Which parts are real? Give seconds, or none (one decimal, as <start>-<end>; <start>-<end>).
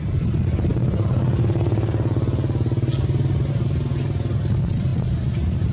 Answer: 0.0-5.7